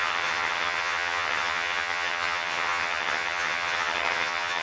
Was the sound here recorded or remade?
remade